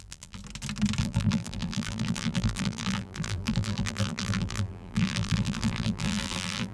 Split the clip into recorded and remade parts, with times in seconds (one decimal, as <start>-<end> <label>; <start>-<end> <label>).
0.0-0.4 remade; 0.4-1.0 recorded; 1.0-6.7 remade